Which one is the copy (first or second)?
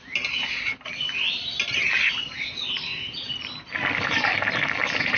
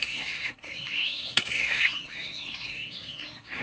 second